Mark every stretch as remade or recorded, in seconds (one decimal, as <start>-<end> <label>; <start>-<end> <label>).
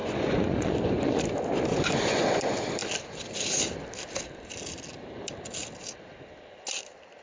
0.0-1.2 remade; 1.2-1.7 recorded; 1.7-2.4 remade; 2.4-7.2 recorded